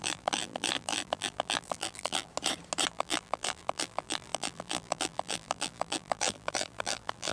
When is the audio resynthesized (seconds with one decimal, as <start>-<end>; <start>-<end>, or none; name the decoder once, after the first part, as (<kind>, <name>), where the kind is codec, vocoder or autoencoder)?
0.0-2.3 (vocoder, BigVGAN v2); 2.9-7.3